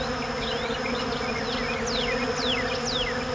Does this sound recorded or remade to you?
recorded